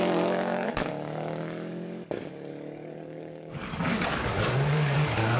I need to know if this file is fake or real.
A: fake